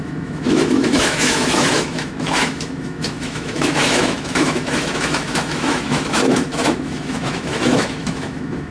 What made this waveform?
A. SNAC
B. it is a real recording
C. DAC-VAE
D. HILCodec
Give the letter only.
C